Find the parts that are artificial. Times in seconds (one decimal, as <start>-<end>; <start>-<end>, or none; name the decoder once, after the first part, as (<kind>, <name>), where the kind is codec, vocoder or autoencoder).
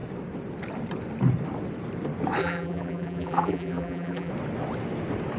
2.4-4.3 (vocoder, BigVGAN v2)